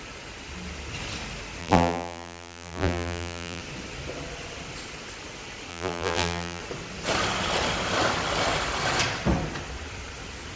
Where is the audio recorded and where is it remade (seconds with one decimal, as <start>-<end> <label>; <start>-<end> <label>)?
0.0-1.6 recorded; 1.6-3.6 remade; 3.6-5.7 recorded; 5.7-6.6 remade; 6.6-10.6 recorded